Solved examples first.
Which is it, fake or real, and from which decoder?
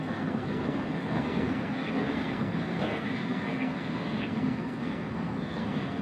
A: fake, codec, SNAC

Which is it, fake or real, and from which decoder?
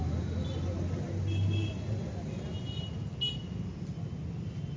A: real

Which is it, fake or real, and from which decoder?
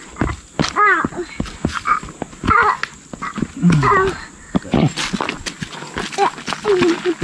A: real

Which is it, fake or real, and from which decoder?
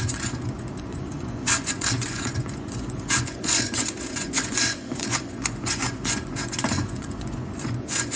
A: fake, vocoder, Vocos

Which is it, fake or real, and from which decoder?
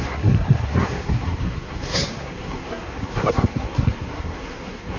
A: fake, codec, SNAC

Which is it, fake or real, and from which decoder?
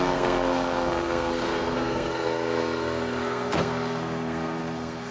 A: fake, codec, SNAC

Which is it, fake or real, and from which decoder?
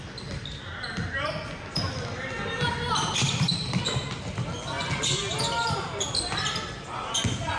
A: real